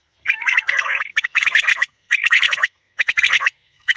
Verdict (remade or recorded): remade